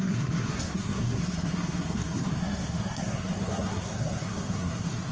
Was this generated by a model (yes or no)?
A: yes